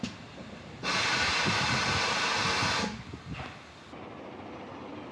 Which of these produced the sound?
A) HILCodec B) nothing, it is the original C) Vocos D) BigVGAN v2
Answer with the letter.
B